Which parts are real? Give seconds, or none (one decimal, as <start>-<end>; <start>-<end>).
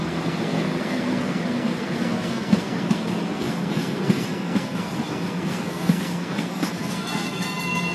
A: none